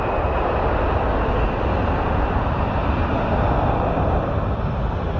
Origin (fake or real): real